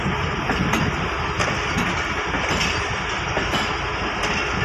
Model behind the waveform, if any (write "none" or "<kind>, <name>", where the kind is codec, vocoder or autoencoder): none